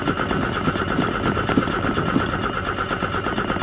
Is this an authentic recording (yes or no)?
yes